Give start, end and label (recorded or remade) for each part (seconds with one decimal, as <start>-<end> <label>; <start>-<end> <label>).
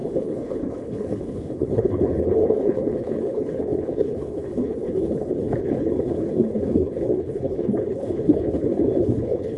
0.0-9.6 remade